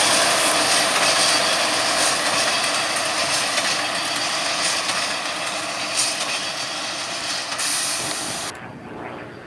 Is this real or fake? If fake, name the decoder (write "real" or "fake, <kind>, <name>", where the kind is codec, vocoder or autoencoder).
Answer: real